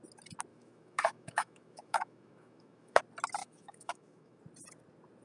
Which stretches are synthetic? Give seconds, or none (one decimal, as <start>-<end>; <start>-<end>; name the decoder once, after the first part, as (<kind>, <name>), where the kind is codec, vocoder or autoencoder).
0.5-3.0 (autoencoder, DAC-VAE); 3.4-4.4